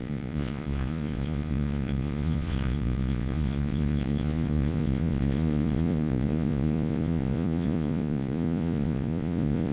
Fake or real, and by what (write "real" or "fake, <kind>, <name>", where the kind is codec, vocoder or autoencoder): fake, vocoder, Vocos